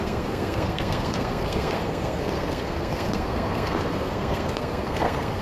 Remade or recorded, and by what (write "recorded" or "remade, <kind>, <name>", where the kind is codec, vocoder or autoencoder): remade, codec, SNAC